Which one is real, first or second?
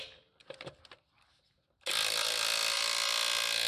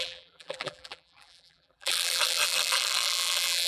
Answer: first